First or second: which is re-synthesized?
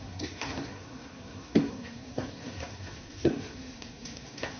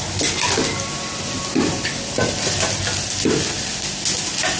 first